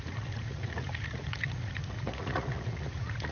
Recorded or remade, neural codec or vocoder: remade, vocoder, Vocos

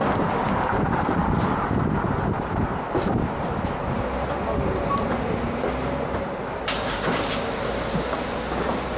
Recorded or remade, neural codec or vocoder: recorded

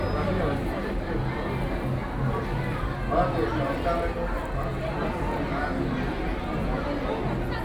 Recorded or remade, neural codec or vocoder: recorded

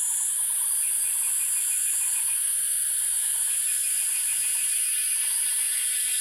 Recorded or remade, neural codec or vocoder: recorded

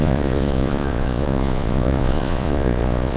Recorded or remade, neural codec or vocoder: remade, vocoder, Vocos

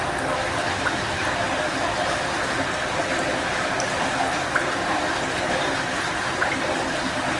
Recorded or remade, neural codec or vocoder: recorded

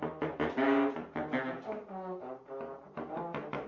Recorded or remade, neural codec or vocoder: recorded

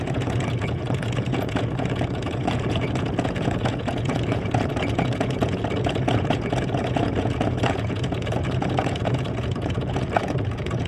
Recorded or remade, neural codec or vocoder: remade, vocoder, Vocos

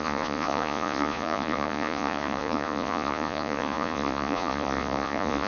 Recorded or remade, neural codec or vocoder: remade, vocoder, Vocos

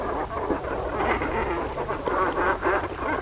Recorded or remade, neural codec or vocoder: recorded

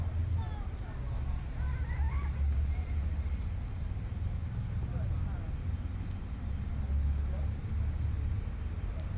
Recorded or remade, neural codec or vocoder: recorded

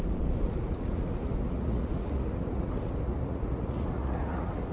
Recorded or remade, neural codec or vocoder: remade, vocoder, Vocos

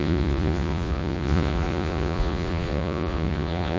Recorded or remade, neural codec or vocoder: remade, vocoder, Vocos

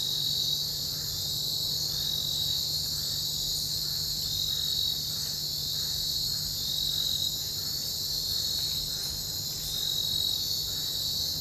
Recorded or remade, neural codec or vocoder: recorded